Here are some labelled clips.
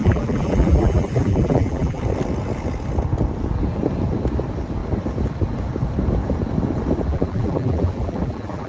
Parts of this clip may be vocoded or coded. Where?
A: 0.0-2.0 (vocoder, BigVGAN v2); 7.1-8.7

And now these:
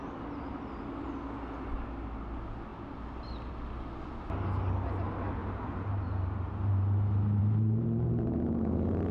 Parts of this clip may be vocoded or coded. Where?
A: 5.4-6.7 (vocoder, BigVGAN v2); 7.4-9.1

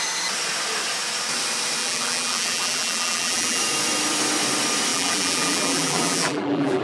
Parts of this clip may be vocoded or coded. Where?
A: 1.8-3.6 (vocoder, BigVGAN v2); 4.9-6.8

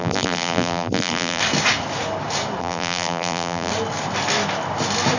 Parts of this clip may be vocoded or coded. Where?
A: 0.0-1.4 (vocoder, BigVGAN v2); 2.6-3.7

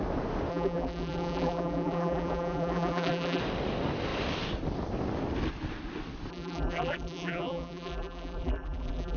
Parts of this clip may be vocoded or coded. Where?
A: 0.5-3.4 (vocoder, BigVGAN v2); 6.3-9.2